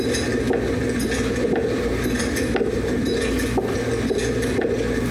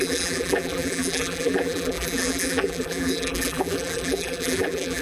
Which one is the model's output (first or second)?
second